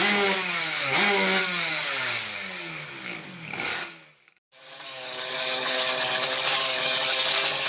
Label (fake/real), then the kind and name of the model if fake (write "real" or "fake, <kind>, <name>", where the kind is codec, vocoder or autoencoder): fake, codec, DAC